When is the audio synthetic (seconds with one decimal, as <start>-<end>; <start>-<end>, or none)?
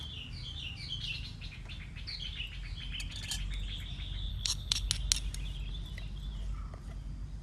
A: 4.3-4.9